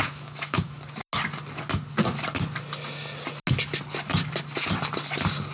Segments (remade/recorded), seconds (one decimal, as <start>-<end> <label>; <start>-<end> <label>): 0.0-0.7 remade; 0.7-5.5 recorded